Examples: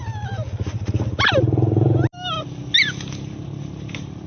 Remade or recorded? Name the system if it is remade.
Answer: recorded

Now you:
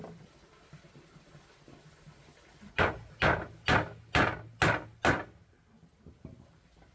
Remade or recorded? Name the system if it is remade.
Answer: recorded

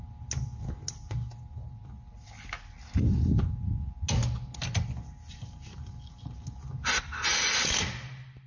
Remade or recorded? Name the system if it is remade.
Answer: recorded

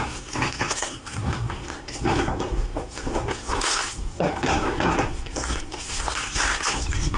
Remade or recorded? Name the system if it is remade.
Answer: remade, codec, SNAC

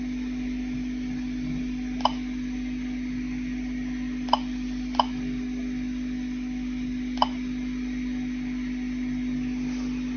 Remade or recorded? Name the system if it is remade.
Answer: recorded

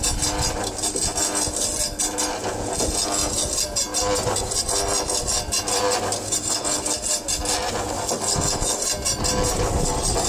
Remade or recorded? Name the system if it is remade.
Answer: recorded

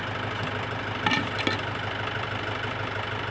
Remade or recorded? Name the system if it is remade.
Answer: recorded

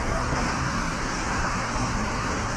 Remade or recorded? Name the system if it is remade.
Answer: remade, codec, SNAC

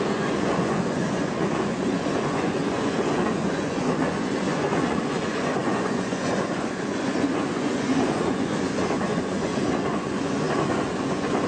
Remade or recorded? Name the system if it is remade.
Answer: remade, vocoder, Vocos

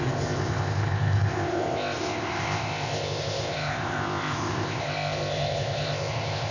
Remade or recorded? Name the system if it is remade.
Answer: remade, codec, ZipCodec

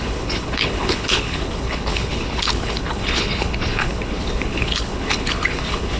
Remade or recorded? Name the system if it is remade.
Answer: remade, codec, HILCodec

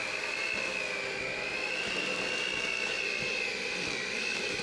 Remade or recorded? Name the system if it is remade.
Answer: recorded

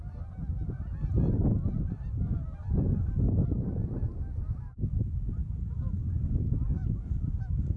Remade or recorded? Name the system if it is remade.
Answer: recorded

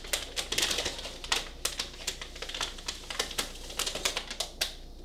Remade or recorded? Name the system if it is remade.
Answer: recorded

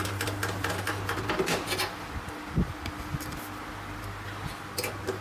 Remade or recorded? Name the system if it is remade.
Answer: recorded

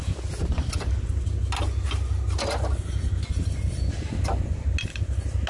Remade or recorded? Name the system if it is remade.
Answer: recorded